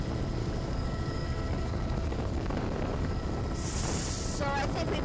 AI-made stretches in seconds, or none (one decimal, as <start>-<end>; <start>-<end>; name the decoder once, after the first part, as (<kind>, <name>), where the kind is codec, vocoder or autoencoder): 0.4-3.4 (codec, DAC)